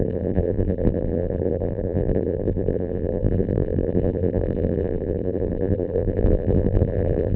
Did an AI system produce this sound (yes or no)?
yes